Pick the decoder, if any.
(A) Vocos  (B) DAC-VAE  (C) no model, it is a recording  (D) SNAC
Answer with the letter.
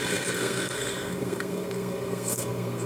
D